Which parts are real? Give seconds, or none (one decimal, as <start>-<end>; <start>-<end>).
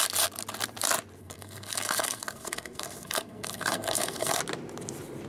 0.0-1.2; 4.4-5.3